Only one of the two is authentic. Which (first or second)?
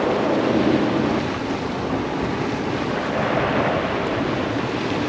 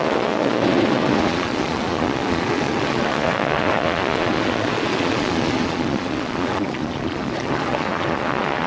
first